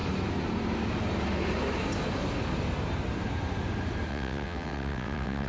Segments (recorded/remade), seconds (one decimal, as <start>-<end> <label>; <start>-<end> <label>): 0.0-4.1 recorded; 4.1-5.5 remade